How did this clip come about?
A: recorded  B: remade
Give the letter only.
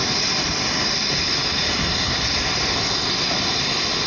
A